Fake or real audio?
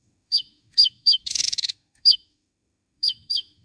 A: fake